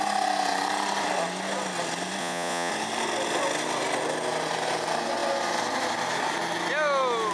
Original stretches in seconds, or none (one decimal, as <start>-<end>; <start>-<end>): 0.0-2.2; 2.7-7.3